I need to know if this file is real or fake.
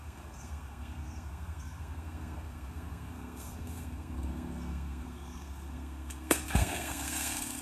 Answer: fake